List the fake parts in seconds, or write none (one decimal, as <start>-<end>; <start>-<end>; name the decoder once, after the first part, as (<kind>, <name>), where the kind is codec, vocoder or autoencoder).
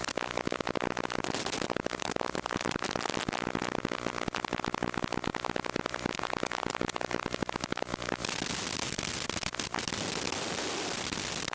none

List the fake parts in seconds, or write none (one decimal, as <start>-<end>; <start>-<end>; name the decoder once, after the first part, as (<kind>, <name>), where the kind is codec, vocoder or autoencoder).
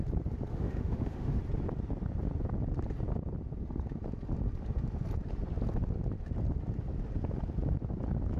0.5-1.4 (autoencoder, DAC-VAE)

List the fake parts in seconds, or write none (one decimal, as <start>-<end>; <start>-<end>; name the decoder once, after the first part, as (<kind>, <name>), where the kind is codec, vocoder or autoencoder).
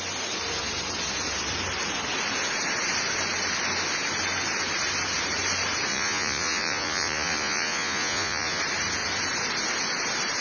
5.9-8.6 (vocoder, Vocos)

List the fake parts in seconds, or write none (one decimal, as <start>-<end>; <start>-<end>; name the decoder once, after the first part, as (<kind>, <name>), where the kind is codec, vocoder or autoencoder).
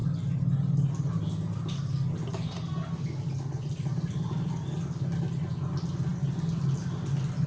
none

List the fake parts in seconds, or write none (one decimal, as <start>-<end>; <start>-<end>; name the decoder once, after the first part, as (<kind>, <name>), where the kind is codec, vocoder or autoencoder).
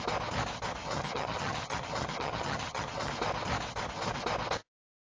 0.8-3.1 (vocoder, HiFi-GAN)